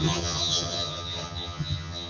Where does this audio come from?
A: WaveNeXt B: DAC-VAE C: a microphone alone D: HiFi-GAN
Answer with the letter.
D